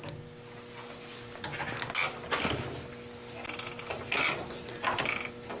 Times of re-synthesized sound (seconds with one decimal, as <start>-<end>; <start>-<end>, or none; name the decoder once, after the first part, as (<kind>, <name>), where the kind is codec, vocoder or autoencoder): none